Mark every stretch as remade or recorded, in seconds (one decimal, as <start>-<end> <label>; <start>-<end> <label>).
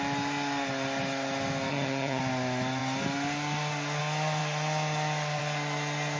0.0-1.7 recorded; 1.7-2.2 remade; 2.2-6.2 recorded